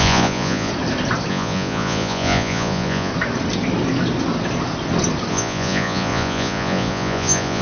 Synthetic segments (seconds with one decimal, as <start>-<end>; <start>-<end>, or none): 0.0-0.7; 1.3-3.1; 5.3-7.6